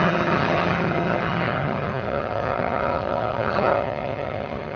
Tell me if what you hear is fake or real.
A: fake